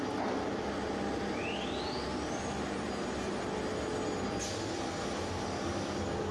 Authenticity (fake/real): real